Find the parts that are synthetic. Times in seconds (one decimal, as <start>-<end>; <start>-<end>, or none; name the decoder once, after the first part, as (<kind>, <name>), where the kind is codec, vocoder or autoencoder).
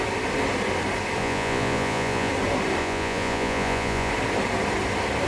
1.2-2.3 (vocoder, Vocos); 2.8-4.1